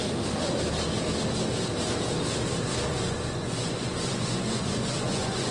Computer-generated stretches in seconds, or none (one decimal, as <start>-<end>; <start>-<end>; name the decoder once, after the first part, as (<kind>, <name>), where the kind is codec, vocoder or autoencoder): 2.9-5.5 (vocoder, Vocos)